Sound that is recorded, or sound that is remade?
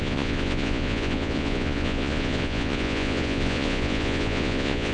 remade